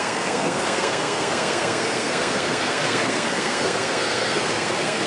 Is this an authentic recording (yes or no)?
no